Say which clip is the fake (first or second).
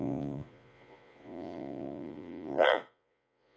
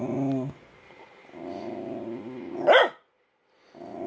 first